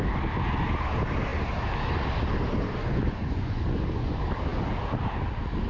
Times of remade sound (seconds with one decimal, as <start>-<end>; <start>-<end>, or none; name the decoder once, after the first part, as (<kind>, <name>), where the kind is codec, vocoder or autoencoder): 2.8-4.1 (vocoder, Vocos)